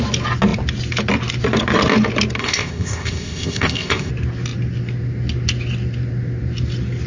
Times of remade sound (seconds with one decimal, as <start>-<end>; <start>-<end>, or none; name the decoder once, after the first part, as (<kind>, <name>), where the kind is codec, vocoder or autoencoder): 2.4-4.1 (codec, ZipCodec)